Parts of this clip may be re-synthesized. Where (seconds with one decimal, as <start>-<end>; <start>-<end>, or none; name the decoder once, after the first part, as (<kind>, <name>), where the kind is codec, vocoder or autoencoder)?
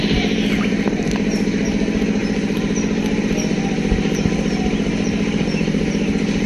none